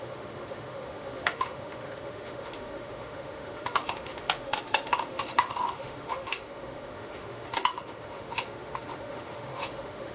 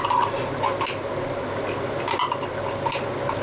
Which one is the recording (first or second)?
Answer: second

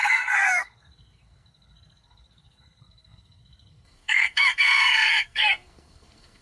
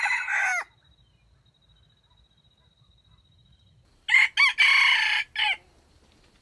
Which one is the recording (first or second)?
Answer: second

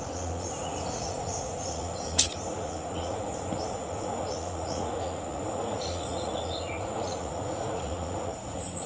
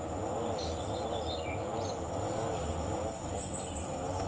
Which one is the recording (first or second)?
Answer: second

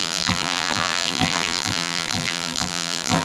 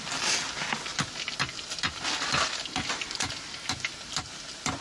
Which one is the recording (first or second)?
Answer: second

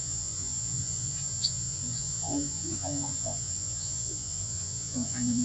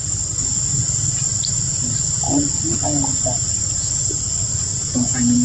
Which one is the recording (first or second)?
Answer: second